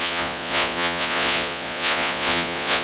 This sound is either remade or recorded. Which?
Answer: remade